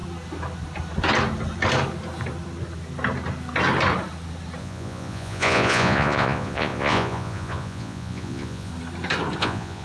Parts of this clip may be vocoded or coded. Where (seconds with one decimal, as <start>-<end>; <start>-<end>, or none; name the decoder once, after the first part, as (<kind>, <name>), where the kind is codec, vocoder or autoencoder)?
4.6-8.7 (vocoder, Vocos); 9.4-9.8